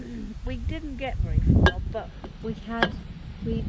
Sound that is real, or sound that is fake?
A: real